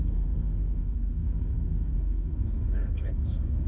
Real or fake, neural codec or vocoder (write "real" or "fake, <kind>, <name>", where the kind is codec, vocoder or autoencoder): fake, codec, SNAC